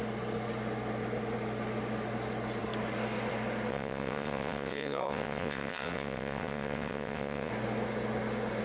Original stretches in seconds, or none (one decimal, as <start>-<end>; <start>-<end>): 0.0-3.7; 7.5-8.6